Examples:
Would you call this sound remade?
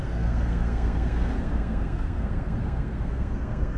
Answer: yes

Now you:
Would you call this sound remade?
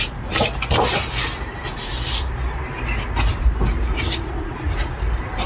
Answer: no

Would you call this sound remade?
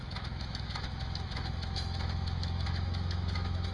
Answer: yes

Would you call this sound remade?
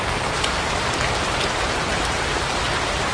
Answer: yes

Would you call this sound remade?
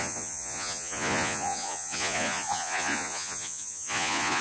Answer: yes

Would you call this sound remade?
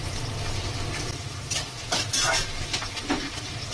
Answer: no